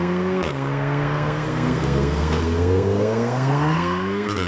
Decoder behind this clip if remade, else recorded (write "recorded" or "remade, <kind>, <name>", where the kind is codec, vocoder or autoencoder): remade, codec, SNAC